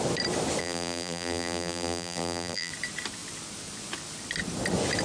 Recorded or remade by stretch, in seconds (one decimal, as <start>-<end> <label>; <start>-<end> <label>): 0.0-0.6 recorded; 0.6-2.7 remade; 2.7-5.0 recorded